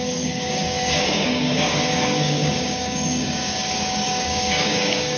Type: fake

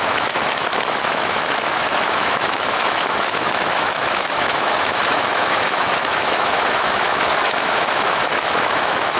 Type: fake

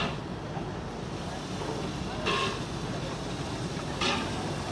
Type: real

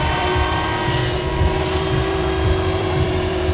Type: fake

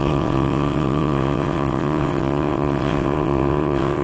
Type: fake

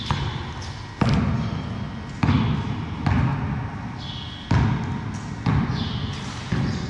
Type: real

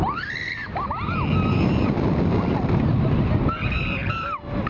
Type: real